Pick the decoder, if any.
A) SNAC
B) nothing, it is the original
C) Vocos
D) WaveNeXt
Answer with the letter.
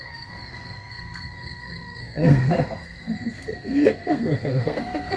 A